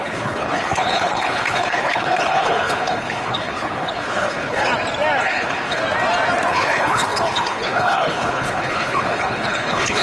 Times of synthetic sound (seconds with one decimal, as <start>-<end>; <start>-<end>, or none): 0.0-4.7; 5.2-5.8; 6.5-10.0